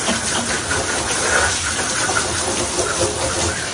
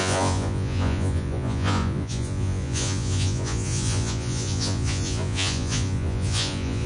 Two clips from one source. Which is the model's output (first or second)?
second